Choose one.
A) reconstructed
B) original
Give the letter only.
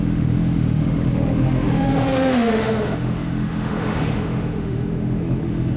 A